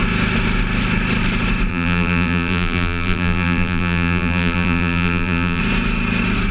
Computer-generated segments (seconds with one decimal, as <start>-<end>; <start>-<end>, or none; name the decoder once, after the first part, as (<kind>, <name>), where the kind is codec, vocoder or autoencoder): 1.7-5.6 (vocoder, BigVGAN v2)